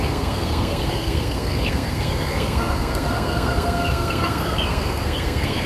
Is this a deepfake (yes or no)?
yes